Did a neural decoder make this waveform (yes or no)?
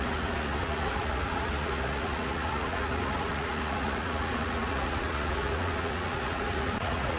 yes